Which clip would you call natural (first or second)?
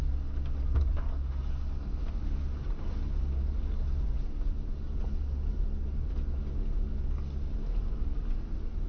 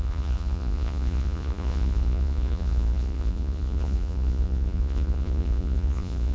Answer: first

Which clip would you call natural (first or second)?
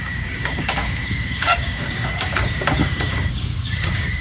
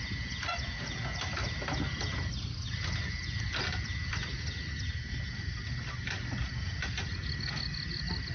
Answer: second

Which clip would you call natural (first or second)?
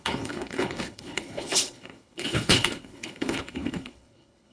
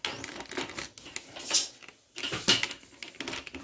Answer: second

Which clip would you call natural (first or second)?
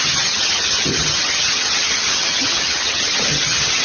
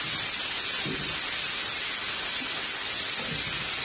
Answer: second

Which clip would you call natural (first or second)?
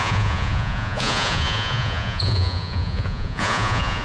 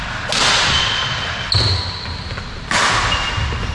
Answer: second